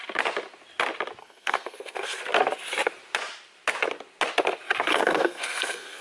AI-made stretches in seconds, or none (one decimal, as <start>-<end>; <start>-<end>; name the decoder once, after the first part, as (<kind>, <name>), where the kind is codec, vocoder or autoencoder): 1.2-2.2 (codec, SNAC); 4.9-6.0